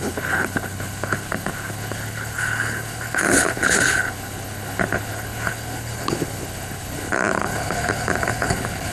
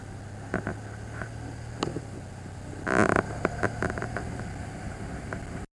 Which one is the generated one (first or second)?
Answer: first